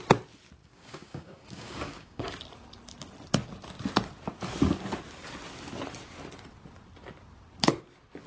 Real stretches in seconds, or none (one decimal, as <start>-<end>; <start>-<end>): 0.0-0.6; 2.3-8.3